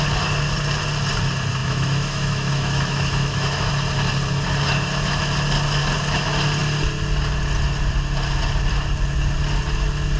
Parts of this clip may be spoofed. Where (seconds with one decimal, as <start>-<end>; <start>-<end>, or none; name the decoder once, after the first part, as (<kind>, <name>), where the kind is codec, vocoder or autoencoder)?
1.6-3.7 (autoencoder, DAC-VAE)

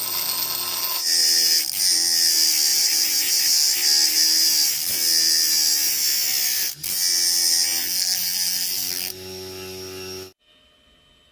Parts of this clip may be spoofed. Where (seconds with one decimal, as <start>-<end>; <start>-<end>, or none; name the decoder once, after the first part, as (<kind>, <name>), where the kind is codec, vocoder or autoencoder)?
2.7-3.7 (vocoder, BigVGAN v2)

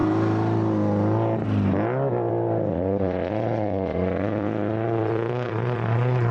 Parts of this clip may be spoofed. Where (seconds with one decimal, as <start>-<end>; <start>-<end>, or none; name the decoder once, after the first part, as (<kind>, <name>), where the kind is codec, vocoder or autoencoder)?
2.7-6.3 (vocoder, Vocos)